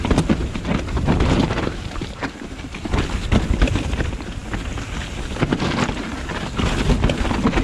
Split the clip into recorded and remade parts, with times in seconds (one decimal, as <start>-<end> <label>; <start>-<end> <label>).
0.0-0.4 recorded; 0.4-2.5 remade; 2.5-7.6 recorded